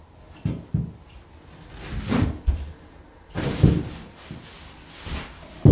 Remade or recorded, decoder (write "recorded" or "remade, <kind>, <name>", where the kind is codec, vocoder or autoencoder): recorded